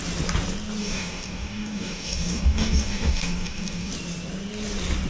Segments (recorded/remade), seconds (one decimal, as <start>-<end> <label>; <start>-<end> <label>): 0.0-0.8 recorded; 0.8-3.9 remade; 3.9-5.1 recorded

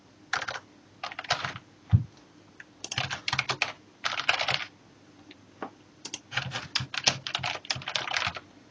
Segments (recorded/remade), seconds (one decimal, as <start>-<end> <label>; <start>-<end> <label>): 0.0-8.7 recorded

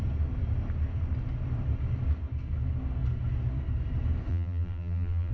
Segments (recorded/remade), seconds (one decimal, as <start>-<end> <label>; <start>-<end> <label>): 0.0-4.3 recorded; 4.3-5.3 remade